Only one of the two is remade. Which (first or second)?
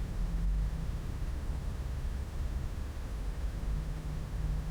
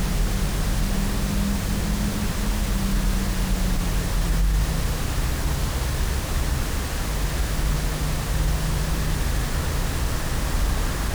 first